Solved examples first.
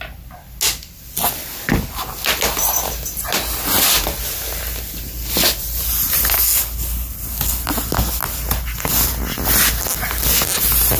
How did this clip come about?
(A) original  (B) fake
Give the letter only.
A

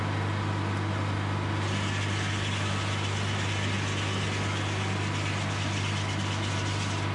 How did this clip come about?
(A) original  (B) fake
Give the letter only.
A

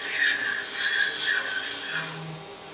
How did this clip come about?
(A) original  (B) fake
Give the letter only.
A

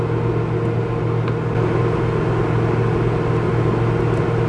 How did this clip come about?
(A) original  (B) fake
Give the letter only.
A